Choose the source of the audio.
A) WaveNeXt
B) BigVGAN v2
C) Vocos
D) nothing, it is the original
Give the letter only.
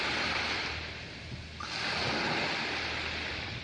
D